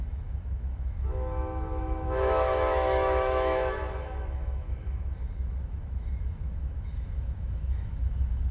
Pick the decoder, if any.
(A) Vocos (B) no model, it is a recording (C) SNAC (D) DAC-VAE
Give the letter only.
D